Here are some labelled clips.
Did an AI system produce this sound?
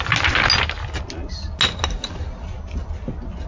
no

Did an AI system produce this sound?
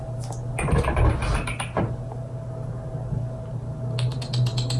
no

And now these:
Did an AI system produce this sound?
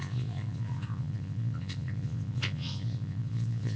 yes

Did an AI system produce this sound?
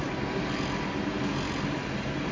no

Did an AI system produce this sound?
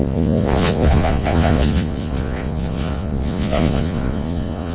yes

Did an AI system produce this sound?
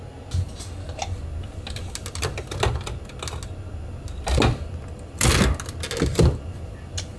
no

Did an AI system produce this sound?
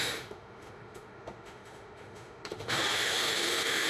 yes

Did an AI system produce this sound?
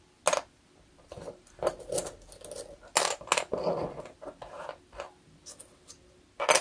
no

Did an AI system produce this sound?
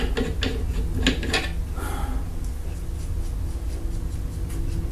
no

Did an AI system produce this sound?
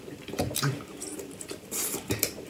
yes